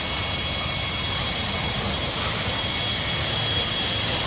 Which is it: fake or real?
real